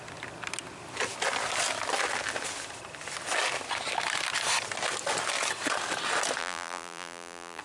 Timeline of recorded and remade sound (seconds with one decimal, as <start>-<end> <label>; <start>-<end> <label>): 0.0-6.4 recorded; 6.4-7.6 remade